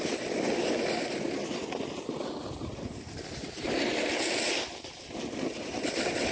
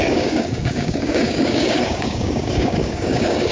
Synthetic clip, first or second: second